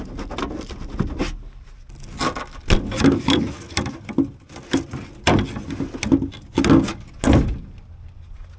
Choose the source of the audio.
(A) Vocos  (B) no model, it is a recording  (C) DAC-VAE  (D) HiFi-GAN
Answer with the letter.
B